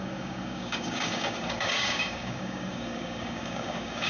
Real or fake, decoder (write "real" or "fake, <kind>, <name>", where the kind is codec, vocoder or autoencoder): fake, codec, DAC